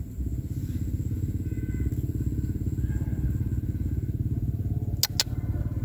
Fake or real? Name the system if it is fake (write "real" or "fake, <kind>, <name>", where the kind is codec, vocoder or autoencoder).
real